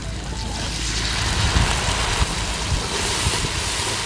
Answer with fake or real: real